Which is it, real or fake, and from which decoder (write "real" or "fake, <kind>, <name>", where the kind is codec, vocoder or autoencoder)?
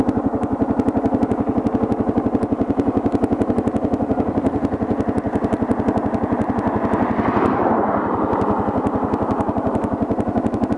real